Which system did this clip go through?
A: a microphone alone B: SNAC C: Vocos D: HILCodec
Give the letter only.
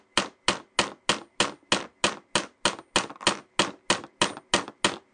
A